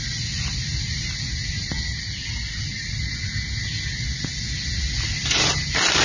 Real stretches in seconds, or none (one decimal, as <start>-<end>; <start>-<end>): 0.0-6.0